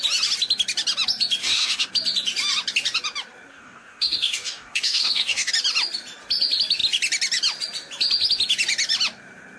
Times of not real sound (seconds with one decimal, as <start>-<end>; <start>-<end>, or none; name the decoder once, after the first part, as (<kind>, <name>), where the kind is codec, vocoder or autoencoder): 1.4-1.9 (codec, DAC); 3.5-5.5